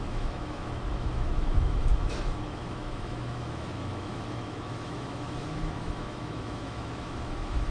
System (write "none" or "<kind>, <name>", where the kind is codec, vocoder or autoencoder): autoencoder, DAC-VAE